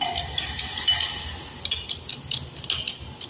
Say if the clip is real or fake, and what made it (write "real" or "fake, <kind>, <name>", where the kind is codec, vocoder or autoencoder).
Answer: real